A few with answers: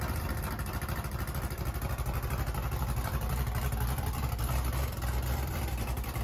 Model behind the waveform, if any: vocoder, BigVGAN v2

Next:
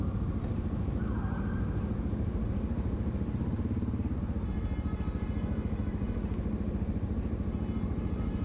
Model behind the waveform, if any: none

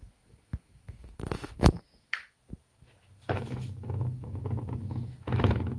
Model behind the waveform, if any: autoencoder, DAC-VAE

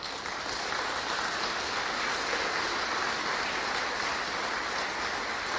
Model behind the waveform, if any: none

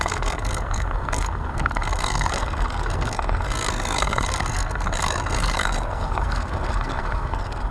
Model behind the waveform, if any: codec, SNAC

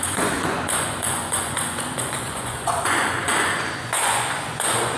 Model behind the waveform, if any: vocoder, Vocos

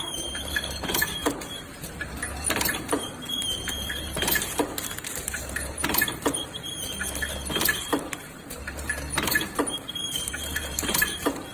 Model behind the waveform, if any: vocoder, BigVGAN v2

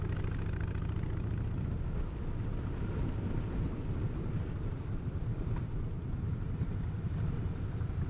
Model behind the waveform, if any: none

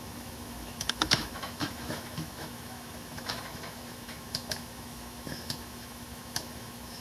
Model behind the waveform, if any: autoencoder, DAC-VAE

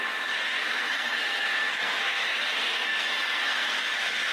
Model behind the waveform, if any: codec, SNAC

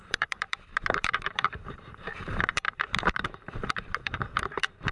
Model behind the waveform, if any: vocoder, BigVGAN v2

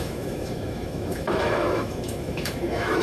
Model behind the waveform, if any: autoencoder, DAC-VAE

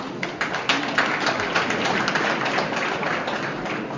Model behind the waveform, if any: none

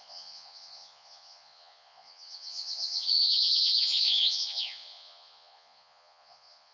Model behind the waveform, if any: vocoder, Vocos